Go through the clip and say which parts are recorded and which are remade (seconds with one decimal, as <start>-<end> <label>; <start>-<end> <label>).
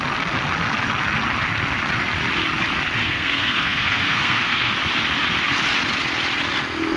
0.0-3.0 recorded; 3.0-4.7 remade; 4.7-7.0 recorded